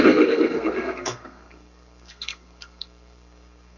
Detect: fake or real fake